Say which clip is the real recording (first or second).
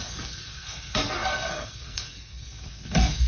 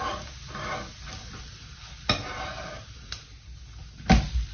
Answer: second